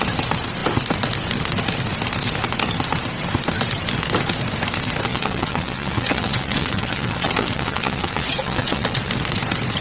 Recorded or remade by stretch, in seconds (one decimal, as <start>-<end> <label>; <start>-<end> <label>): 0.0-5.1 recorded; 5.1-9.1 remade; 9.1-9.8 recorded